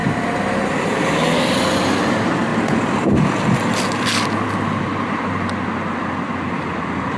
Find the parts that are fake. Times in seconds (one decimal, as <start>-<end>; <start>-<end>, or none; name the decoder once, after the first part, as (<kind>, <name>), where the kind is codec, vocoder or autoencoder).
0.0-0.7 (vocoder, BigVGAN v2)

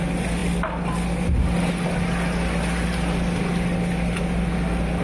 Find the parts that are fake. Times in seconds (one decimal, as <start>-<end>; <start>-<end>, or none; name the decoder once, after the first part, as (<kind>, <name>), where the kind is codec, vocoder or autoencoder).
none

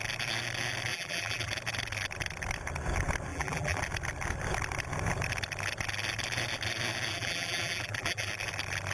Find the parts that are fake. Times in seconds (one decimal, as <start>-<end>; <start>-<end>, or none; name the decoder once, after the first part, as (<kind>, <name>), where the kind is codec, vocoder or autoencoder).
0.9-1.5 (vocoder, BigVGAN v2); 3.3-3.8; 7.1-8.3